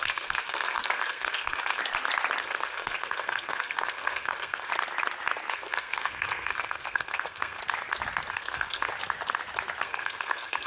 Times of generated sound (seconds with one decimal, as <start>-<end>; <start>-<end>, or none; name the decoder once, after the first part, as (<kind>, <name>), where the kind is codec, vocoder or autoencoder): 0.0-1.8 (codec, SNAC); 2.4-4.7; 5.5-7.6; 8.3-8.9; 9.8-10.7